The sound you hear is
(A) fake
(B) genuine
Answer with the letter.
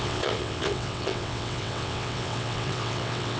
A